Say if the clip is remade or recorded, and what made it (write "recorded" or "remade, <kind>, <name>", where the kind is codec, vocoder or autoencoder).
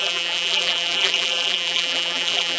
remade, vocoder, BigVGAN v2